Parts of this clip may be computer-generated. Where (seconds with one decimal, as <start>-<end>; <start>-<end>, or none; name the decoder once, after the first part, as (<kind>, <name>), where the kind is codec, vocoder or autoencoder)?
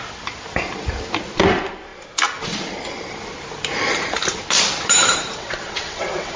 5.4-6.4 (vocoder, WaveNeXt)